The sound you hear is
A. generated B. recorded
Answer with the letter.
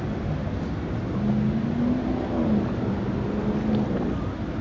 B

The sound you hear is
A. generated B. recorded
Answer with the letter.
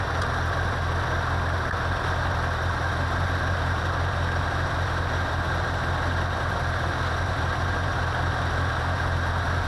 B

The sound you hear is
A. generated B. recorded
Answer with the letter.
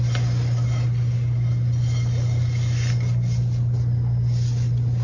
B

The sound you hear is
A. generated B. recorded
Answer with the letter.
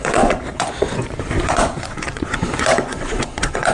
A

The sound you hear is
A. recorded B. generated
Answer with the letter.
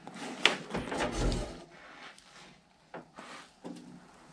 A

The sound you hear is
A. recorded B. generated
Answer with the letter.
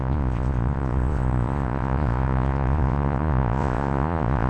B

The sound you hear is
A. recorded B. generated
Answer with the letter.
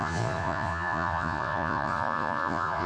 B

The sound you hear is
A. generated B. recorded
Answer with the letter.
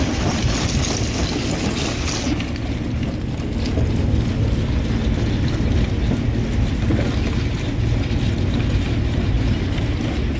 B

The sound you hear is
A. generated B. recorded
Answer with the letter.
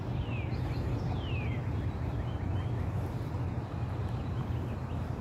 B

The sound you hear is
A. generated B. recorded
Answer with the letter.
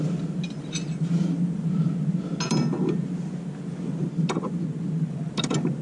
B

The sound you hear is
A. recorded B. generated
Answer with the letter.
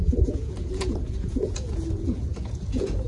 B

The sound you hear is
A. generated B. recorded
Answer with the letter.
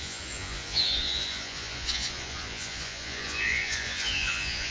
A